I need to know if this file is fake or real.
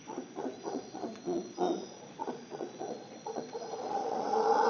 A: fake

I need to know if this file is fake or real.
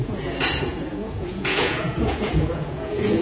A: fake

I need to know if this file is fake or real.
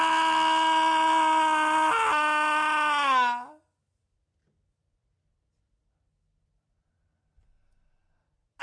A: real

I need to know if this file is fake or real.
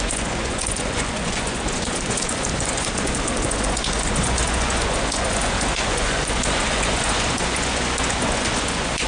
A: fake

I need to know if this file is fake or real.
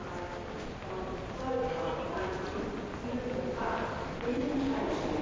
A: real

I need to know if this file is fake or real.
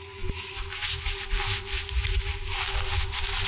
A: real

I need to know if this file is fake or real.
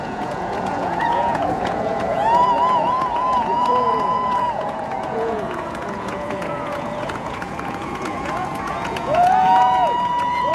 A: fake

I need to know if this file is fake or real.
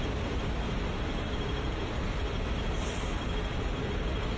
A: real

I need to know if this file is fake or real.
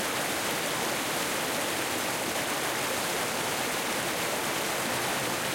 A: real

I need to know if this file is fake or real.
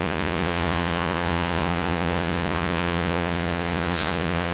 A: fake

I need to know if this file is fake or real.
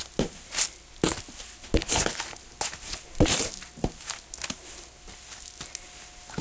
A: real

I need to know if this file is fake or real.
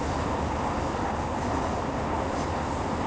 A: real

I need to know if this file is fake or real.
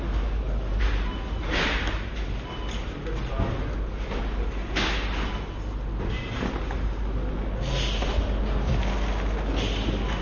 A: real